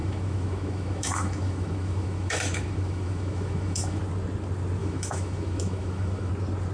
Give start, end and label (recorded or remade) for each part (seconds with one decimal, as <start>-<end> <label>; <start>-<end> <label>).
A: 0.0-4.0 remade; 4.0-4.8 recorded; 4.8-6.3 remade; 6.3-6.7 recorded